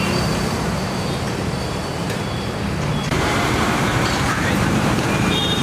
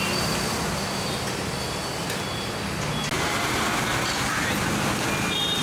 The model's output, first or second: first